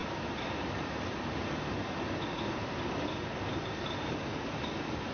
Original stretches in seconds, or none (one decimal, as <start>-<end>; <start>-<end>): 0.0-5.1